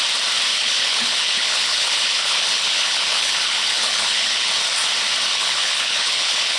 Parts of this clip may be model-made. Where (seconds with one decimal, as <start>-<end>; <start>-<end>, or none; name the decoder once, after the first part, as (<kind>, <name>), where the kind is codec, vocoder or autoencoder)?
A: 0.5-4.5 (codec, HILCodec); 5.3-6.6